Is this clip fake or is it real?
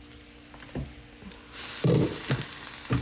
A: real